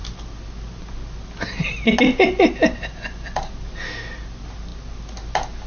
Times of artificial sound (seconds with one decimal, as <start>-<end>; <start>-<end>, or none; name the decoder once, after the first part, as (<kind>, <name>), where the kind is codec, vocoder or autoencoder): none